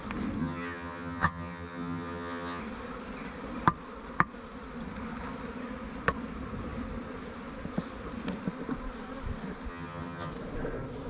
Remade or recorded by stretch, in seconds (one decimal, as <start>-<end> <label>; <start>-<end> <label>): 0.0-0.4 recorded; 0.4-2.6 remade; 2.6-9.7 recorded; 9.7-10.3 remade; 10.3-11.1 recorded